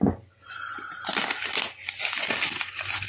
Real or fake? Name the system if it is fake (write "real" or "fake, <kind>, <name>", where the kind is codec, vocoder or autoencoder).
real